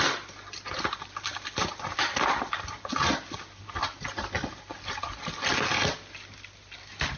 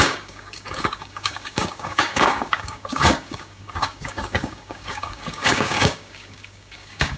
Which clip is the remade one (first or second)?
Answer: second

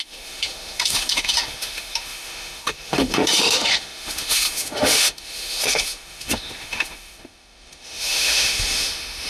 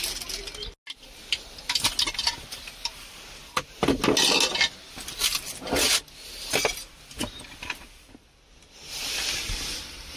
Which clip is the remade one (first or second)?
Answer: first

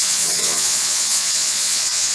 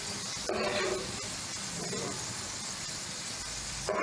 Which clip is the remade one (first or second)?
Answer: first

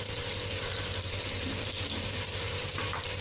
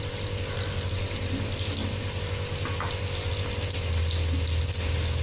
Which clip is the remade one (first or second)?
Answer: first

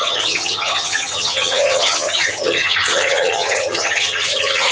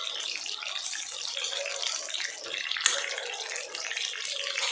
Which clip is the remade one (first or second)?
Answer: first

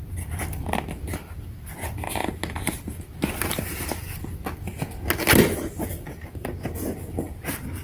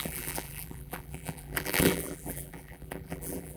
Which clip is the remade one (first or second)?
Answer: second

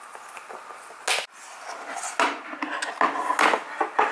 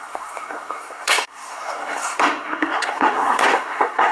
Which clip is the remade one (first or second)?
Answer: second